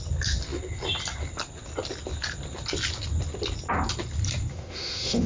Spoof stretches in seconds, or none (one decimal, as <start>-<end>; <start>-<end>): 4.5-5.3